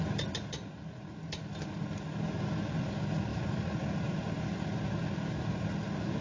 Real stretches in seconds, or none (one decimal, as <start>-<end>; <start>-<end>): 0.0-3.3; 4.2-6.2